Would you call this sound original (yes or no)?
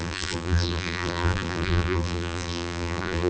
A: no